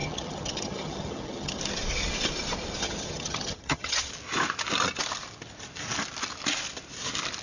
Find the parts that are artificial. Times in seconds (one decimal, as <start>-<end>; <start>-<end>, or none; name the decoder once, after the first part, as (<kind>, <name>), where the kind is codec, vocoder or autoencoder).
0.0-1.6 (vocoder, HiFi-GAN); 2.8-4.1